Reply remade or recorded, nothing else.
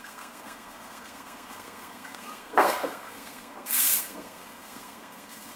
remade